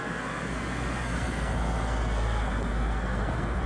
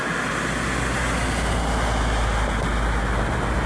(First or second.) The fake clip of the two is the first